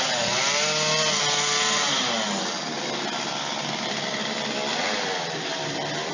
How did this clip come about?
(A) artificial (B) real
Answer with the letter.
B